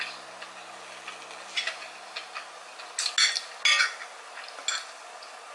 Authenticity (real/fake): real